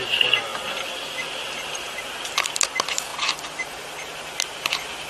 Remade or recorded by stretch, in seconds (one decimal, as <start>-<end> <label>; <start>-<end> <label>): 0.0-0.5 recorded; 0.5-2.0 remade; 2.0-5.1 recorded